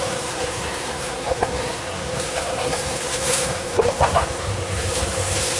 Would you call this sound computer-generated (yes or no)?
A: yes